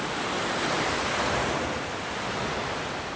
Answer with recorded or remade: recorded